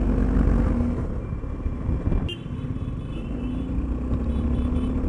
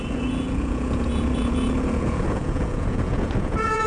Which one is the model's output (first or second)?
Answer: second